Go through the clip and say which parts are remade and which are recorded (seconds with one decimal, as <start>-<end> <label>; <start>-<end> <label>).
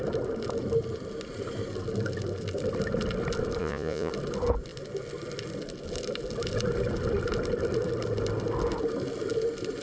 0.0-3.6 recorded; 3.6-4.1 remade; 4.1-9.8 recorded